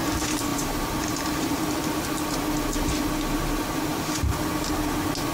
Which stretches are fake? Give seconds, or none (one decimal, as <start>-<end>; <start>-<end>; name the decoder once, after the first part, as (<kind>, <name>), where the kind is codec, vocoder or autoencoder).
0.5-2.1 (vocoder, BigVGAN v2)